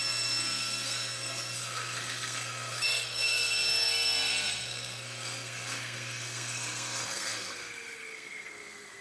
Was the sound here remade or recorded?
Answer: remade